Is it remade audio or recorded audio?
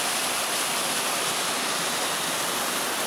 recorded